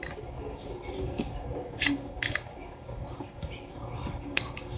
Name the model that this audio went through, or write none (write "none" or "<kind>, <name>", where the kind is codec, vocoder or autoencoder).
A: codec, DAC